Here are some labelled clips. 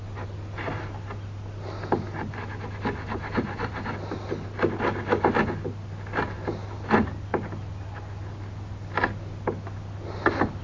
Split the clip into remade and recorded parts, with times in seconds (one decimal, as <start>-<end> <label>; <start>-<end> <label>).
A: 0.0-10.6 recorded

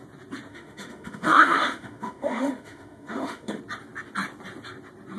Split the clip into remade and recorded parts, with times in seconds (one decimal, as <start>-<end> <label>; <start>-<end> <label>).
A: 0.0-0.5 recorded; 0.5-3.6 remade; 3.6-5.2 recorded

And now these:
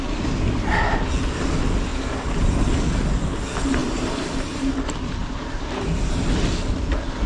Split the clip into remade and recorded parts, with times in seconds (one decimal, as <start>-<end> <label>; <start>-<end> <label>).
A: 0.0-1.9 recorded; 1.9-2.8 remade; 2.8-3.8 recorded; 3.8-4.7 remade; 4.7-5.2 recorded; 5.2-6.3 remade; 6.3-7.3 recorded

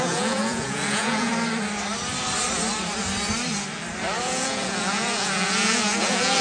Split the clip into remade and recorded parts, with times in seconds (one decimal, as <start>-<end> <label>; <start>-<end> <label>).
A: 0.0-1.3 remade; 1.3-4.2 recorded; 4.2-6.4 remade

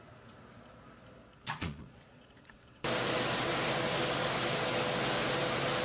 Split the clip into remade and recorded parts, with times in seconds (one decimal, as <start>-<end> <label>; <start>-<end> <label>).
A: 0.0-1.4 recorded; 1.4-2.8 remade; 2.8-5.8 recorded

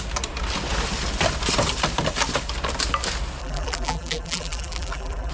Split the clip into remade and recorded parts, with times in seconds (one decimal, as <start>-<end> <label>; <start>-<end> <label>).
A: 0.0-3.4 recorded; 3.4-5.3 remade

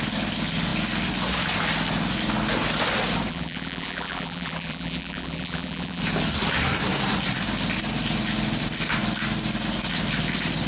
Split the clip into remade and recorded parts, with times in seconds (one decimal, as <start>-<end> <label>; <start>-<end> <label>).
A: 0.0-3.3 recorded; 3.3-6.0 remade; 6.0-10.7 recorded

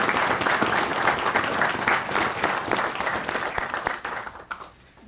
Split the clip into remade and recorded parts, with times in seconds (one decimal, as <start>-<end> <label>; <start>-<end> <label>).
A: 0.0-5.1 recorded